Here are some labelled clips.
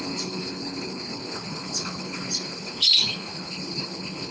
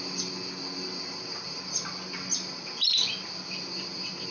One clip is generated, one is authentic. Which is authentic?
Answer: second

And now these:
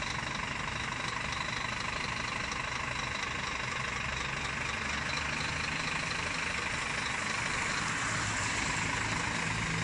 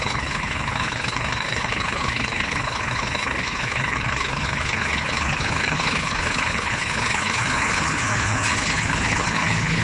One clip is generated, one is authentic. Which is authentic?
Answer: first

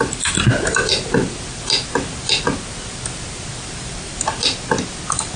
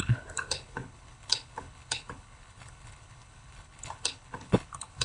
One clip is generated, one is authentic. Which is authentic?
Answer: first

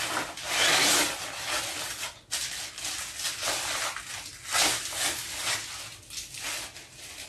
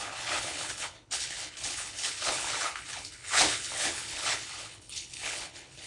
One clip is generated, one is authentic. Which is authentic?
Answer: first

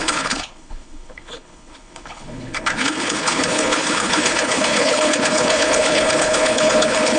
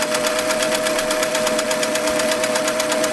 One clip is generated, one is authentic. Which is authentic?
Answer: second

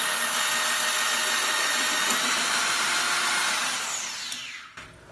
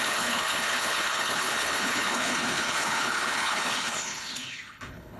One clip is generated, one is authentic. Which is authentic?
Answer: first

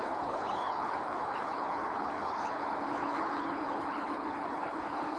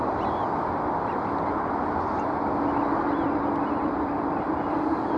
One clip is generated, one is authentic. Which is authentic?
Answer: second